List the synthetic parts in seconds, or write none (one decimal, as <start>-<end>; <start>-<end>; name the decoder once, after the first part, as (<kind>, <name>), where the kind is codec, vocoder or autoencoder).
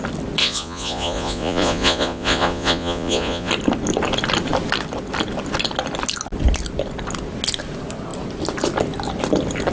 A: 0.4-3.5 (vocoder, Vocos)